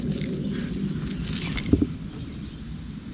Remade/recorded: recorded